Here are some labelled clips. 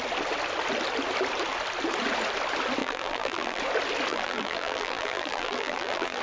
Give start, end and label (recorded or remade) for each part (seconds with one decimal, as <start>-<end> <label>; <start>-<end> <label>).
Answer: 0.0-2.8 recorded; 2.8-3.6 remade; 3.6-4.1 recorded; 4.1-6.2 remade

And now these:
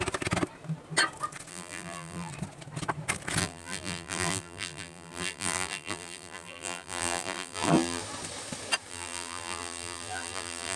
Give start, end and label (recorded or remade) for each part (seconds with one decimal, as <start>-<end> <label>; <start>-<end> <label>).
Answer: 0.0-1.5 recorded; 1.5-2.3 remade; 2.3-3.4 recorded; 3.4-8.0 remade; 8.0-8.9 recorded; 8.9-10.8 remade

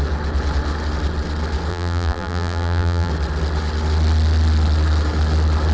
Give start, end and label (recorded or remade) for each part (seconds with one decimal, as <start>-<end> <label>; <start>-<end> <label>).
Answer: 0.0-1.7 recorded; 1.7-3.1 remade; 3.1-5.7 recorded

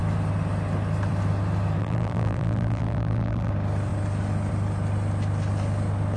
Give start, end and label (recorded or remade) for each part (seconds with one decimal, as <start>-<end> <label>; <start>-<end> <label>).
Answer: 0.0-1.8 recorded; 1.8-3.5 remade; 3.5-6.2 recorded